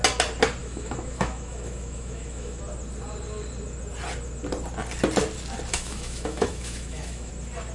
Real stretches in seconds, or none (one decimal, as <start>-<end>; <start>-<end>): 0.0-0.6; 2.6-5.7; 7.3-7.7